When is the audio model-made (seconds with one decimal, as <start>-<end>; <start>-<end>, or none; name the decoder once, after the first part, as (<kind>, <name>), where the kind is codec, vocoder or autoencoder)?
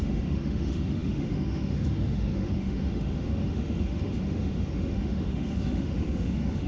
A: 0.0-6.7 (autoencoder, DAC-VAE)